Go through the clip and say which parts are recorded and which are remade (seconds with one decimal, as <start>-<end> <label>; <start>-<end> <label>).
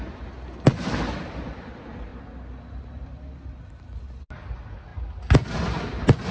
0.0-6.3 recorded